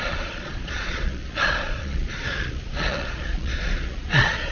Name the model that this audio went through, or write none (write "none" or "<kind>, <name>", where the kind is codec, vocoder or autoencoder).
vocoder, Vocos